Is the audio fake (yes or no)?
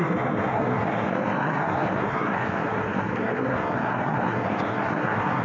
yes